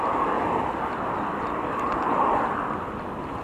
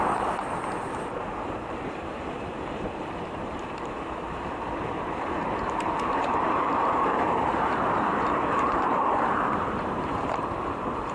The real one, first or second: first